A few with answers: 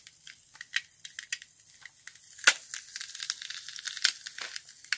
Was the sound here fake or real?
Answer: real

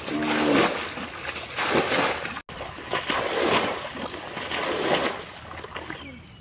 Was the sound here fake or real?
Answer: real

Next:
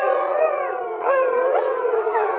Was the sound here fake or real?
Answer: fake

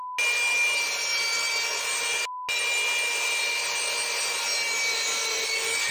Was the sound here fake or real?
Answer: real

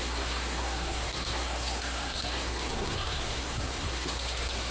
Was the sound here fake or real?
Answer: fake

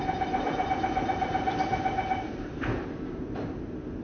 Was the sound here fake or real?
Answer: fake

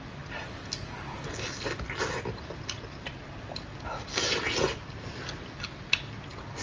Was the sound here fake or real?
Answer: real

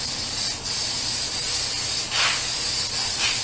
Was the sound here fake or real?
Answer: real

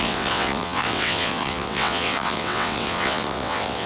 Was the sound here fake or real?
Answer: fake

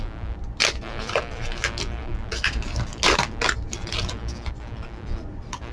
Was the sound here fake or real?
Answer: real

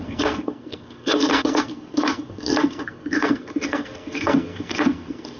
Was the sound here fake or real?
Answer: fake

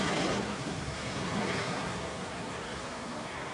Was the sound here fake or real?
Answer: fake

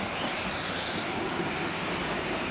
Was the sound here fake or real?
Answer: real